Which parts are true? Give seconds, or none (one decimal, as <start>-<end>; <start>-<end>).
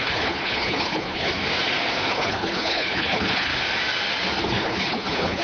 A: 1.3-2.1; 3.5-4.4